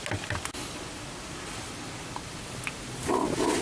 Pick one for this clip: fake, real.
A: real